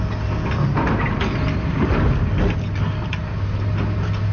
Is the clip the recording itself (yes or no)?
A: yes